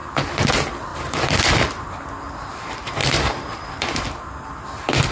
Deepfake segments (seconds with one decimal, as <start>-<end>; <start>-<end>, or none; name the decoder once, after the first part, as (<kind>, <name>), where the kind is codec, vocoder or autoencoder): 0.0-0.5 (vocoder, BigVGAN v2); 0.9-1.9; 3.0-4.3